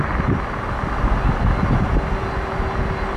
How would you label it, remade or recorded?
recorded